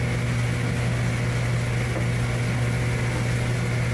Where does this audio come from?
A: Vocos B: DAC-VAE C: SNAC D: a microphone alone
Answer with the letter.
D